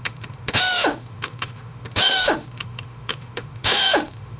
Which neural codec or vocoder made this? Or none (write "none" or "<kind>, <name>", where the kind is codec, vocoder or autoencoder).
autoencoder, DAC-VAE